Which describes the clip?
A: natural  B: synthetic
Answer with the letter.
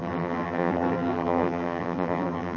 B